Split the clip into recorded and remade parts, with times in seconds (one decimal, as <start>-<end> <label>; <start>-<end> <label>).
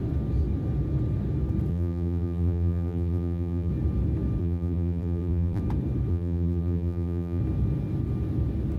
0.0-1.7 recorded; 1.7-3.7 remade; 3.7-4.4 recorded; 4.4-5.6 remade; 5.6-6.1 recorded; 6.1-7.4 remade; 7.4-8.8 recorded